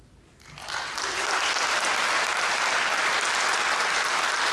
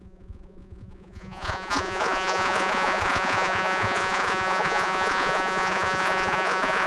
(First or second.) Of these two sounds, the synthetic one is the second